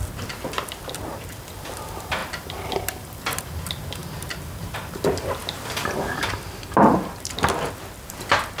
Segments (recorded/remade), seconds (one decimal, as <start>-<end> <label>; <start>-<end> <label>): 0.0-4.0 remade; 4.0-4.7 recorded; 4.7-8.6 remade